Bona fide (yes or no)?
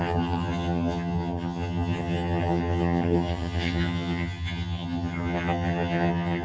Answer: no